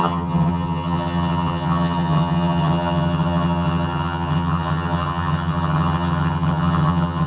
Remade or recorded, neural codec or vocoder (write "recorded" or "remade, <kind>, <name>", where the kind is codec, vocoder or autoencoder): remade, vocoder, HiFi-GAN